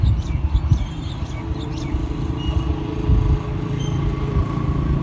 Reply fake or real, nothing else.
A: real